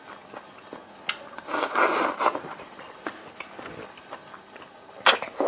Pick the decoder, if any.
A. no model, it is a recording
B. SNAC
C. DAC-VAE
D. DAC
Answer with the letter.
A